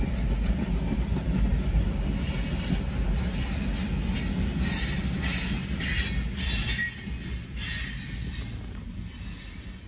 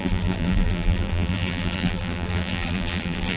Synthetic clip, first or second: second